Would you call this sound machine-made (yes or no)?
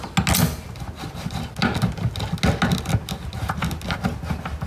no